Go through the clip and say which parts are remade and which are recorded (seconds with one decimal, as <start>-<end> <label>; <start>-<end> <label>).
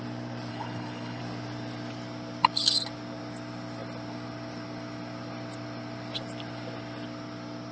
0.0-0.5 recorded; 0.5-1.2 remade; 1.2-7.7 recorded